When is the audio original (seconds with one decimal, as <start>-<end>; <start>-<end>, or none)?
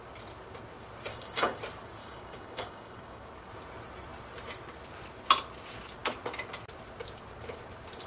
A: 0.0-1.1; 1.6-2.0; 3.2-8.1